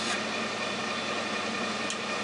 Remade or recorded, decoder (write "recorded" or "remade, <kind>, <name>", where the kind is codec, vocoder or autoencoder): recorded